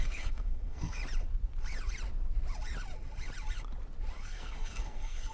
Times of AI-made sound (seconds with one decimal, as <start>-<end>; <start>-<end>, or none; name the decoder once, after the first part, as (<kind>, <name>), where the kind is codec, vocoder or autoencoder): 0.0-1.0 (codec, SNAC); 4.2-5.3

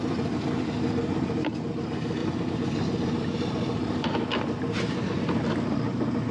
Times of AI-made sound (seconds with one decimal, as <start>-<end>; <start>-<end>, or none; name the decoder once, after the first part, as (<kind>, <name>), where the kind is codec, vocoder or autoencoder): 2.2-6.3 (vocoder, BigVGAN v2)